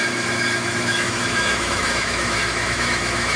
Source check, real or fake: fake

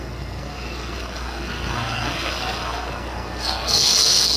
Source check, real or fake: fake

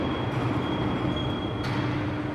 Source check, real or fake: real